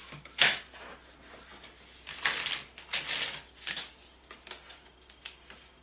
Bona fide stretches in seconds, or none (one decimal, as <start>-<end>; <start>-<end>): 0.6-5.8